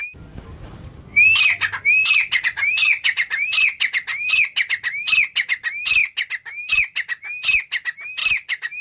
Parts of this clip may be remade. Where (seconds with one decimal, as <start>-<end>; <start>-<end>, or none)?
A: 2.0-4.3; 8.2-8.8